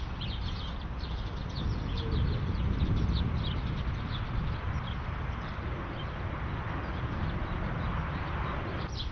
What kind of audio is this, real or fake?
real